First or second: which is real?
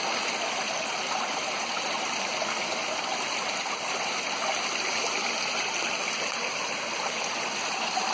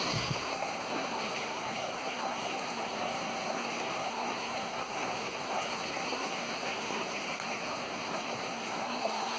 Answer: first